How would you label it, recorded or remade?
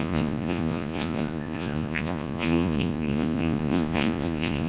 remade